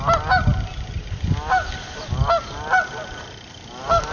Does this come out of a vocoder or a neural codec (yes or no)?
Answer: no